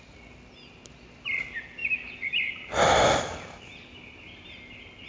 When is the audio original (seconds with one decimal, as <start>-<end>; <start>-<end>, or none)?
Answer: 0.0-5.1